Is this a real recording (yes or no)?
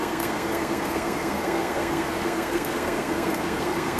no